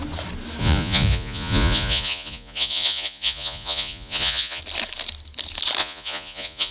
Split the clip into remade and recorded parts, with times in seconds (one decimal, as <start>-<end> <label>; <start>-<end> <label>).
0.0-0.6 recorded; 0.6-4.6 remade; 4.6-5.8 recorded; 5.8-6.7 remade